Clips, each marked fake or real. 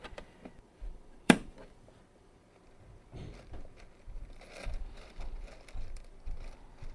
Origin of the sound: fake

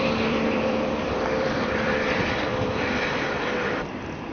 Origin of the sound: fake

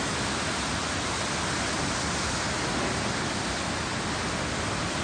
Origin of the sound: real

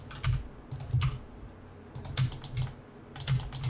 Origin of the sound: real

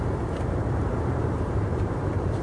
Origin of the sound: fake